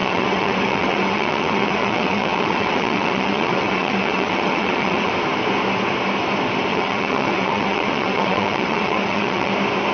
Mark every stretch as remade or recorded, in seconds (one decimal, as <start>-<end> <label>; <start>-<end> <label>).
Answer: 0.0-5.1 remade; 5.1-6.7 recorded; 6.7-9.5 remade; 9.5-9.9 recorded